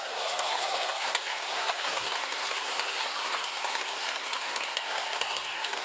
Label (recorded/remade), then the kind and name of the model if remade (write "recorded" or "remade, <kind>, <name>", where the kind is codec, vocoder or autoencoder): remade, codec, SNAC